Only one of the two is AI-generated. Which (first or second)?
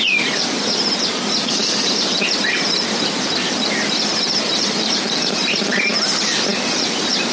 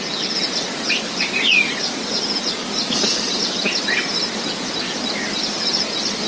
first